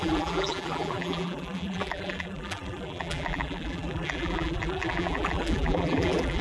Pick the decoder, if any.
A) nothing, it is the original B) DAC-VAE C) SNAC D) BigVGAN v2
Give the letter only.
D